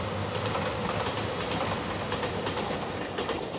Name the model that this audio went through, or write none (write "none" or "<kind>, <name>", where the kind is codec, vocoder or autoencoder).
none